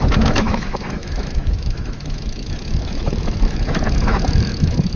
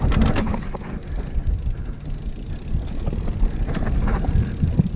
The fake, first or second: first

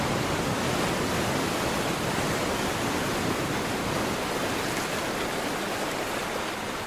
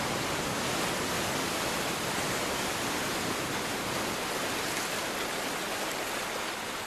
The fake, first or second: first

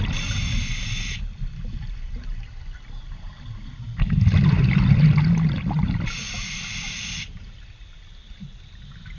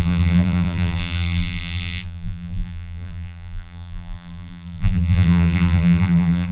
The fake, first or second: second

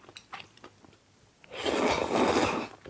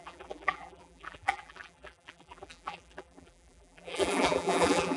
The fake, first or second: second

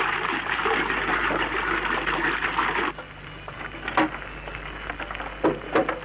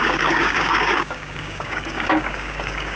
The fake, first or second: second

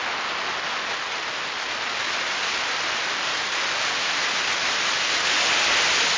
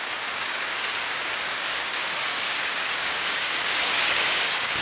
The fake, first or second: second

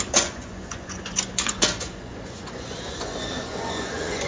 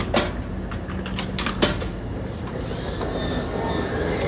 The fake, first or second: first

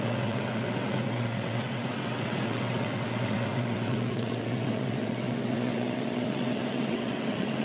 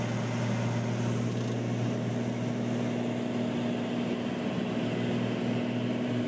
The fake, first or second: first